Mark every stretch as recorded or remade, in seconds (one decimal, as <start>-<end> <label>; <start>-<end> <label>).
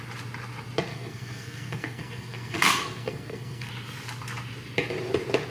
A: 0.0-0.9 recorded; 0.9-3.7 remade; 3.7-5.5 recorded